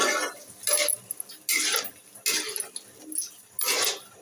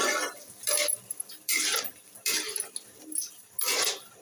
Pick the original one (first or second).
first